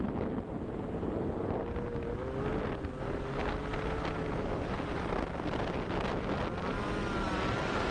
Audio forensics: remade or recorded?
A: recorded